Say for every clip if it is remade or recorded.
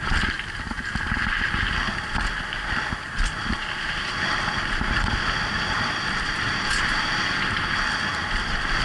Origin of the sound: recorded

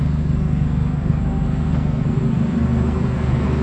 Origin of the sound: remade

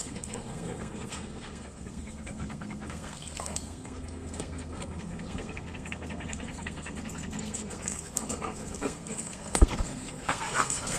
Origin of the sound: remade